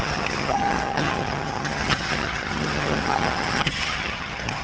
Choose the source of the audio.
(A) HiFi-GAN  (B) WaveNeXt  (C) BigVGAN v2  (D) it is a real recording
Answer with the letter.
A